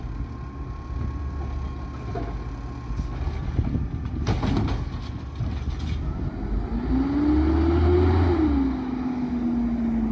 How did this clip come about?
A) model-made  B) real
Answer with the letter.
B